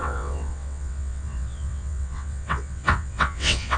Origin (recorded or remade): remade